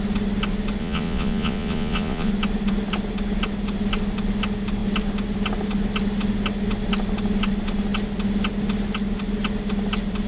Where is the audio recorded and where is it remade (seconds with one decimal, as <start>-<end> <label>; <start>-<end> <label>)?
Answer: 0.0-0.8 recorded; 0.8-2.3 remade; 2.3-10.3 recorded